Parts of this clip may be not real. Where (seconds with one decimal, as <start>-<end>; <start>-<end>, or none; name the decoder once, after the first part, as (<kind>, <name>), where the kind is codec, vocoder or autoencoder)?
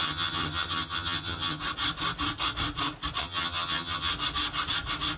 0.0-1.6 (vocoder, HiFi-GAN); 3.2-4.1